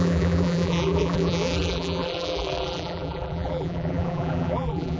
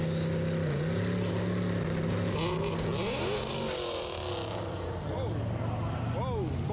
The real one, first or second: second